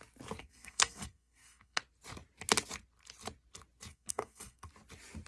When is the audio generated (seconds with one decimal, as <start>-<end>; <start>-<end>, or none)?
0.4-1.8; 3.9-4.7